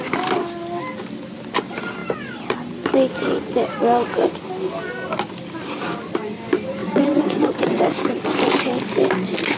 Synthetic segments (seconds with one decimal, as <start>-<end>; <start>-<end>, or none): 6.8-7.8